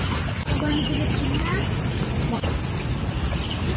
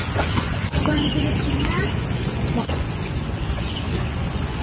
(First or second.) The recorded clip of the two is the first